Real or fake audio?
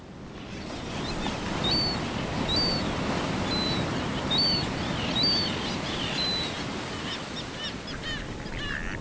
real